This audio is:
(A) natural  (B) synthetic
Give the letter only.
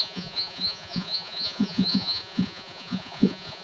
B